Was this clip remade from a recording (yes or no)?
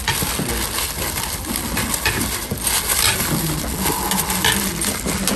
no